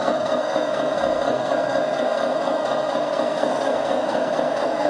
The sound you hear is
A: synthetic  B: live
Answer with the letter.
A